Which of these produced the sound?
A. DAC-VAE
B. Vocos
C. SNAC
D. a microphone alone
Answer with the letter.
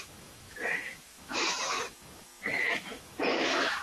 A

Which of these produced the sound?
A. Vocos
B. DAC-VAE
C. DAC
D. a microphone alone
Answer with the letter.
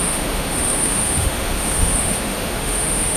B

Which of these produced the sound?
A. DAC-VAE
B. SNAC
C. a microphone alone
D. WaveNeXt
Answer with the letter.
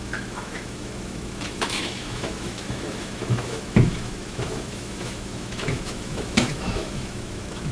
A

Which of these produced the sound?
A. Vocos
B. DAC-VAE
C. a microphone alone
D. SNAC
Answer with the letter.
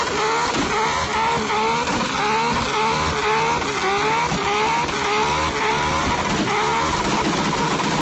C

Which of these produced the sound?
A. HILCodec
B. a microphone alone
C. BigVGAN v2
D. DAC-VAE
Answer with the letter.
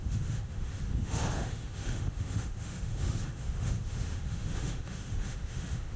D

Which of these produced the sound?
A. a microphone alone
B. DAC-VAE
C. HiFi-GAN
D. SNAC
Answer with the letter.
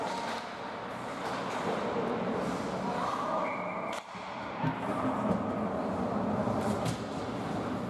A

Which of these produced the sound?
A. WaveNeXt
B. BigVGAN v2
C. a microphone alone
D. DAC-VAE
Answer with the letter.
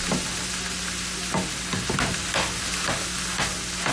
C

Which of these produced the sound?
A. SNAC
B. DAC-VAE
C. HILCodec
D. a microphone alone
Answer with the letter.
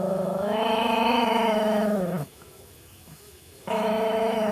B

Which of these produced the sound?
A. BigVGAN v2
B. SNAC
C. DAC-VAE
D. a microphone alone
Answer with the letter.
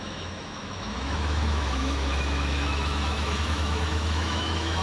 C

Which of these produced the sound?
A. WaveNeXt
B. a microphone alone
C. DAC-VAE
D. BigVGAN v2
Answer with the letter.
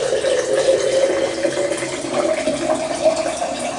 B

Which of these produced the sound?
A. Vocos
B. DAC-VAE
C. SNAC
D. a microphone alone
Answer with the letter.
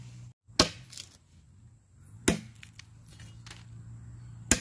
D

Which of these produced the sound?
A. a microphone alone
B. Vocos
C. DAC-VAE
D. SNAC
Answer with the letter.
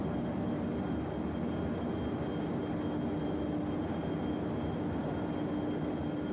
A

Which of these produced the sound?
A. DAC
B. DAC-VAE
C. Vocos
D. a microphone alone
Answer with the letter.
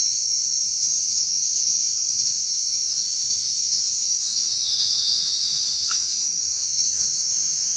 B